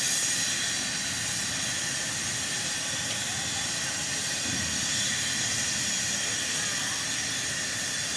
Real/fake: real